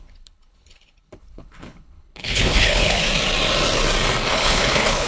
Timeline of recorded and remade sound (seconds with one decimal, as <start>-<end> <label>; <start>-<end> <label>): 0.0-3.1 remade; 3.1-4.3 recorded; 4.3-5.1 remade